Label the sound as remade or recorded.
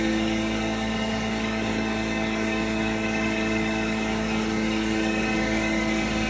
remade